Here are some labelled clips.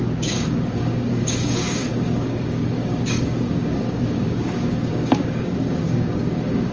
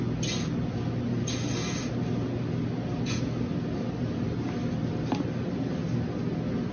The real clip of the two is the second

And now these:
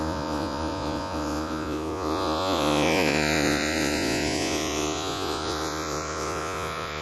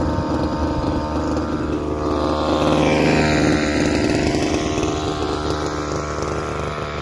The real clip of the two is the second